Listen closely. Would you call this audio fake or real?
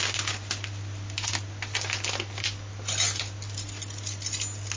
real